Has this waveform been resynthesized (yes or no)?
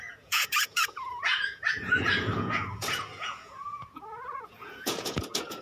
yes